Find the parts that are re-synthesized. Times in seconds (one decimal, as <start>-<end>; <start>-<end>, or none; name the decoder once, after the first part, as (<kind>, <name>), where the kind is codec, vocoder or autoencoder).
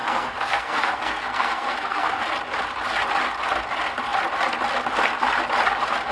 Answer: 0.0-2.2 (codec, SNAC)